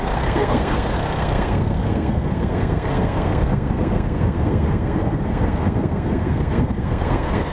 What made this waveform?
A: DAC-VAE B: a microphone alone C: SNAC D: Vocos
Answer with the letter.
C